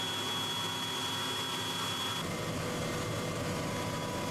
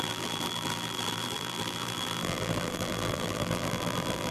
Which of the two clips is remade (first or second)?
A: second